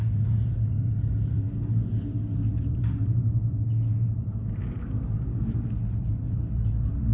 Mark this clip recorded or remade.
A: remade